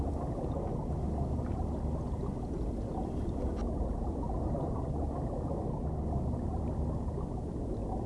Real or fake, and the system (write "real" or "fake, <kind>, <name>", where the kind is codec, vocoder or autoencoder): real